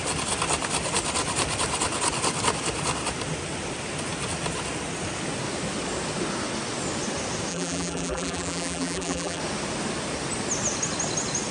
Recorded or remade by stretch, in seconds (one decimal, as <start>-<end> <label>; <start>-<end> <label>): 0.0-7.5 recorded; 7.5-9.4 remade; 9.4-11.5 recorded